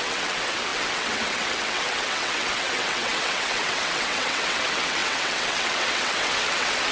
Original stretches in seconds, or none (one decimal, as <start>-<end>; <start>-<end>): none